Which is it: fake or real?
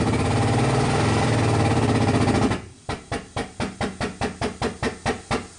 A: real